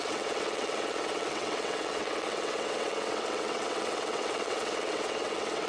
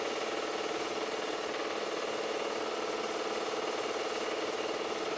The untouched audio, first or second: second